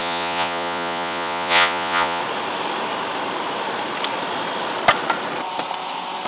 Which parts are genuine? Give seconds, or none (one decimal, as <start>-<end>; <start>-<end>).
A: 2.2-6.3